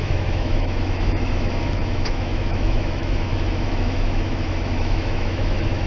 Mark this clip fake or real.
fake